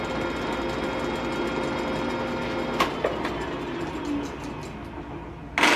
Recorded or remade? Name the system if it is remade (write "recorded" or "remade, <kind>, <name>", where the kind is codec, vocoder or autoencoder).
recorded